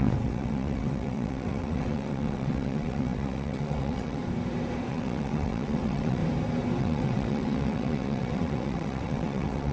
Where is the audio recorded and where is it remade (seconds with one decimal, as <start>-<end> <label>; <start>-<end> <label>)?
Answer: 0.0-4.2 remade; 4.2-4.9 recorded; 4.9-6.2 remade; 6.2-6.8 recorded; 6.8-9.7 remade